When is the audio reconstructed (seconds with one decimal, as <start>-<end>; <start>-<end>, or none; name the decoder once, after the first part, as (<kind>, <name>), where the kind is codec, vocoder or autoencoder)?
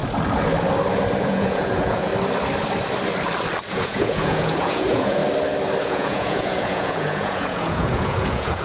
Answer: 1.2-2.1 (vocoder, Vocos); 3.7-5.2; 5.8-8.6